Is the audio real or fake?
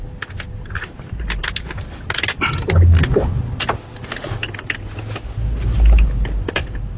real